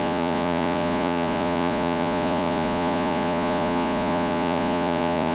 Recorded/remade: remade